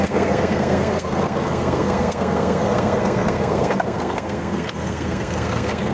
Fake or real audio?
fake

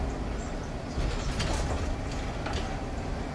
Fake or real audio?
real